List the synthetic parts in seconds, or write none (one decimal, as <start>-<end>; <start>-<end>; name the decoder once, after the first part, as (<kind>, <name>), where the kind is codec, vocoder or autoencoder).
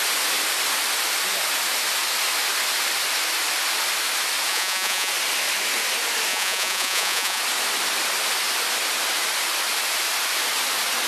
4.5-5.1 (vocoder, Vocos); 6.3-7.4